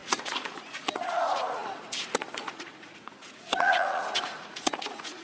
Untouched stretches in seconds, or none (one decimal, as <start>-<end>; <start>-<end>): none